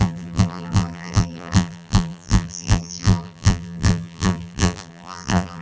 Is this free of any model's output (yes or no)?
no